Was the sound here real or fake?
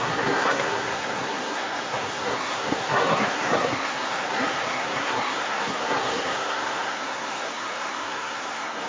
fake